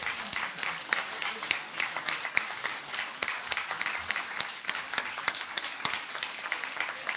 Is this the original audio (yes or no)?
no